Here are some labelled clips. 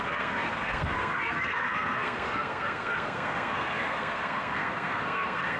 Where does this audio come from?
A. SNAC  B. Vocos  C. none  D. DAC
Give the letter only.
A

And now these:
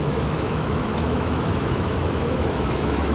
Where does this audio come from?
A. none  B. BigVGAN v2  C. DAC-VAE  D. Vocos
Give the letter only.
C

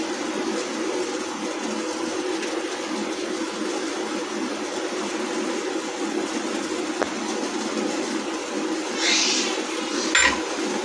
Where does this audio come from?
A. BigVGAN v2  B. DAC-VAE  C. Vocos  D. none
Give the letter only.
D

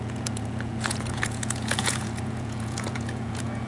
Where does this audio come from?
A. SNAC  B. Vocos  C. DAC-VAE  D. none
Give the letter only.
B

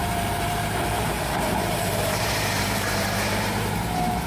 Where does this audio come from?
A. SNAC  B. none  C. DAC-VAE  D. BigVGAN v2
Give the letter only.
D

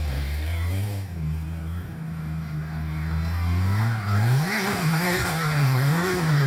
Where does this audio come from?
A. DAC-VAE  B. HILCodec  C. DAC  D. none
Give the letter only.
C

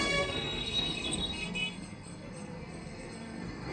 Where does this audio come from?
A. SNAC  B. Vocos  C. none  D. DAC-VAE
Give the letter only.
A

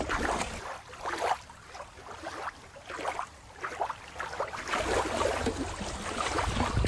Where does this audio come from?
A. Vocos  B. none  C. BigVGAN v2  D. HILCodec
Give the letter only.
B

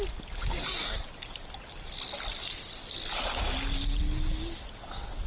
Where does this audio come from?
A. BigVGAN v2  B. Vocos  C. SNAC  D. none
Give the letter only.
D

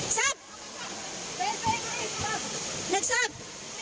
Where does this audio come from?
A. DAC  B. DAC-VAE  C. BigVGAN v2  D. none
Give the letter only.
D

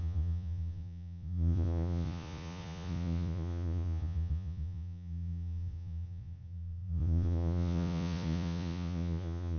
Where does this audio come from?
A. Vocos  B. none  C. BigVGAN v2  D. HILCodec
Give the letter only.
A